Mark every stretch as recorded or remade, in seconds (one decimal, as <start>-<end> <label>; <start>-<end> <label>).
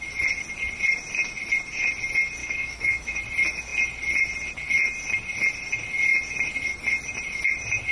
0.0-2.4 recorded; 2.4-3.2 remade; 3.2-7.9 recorded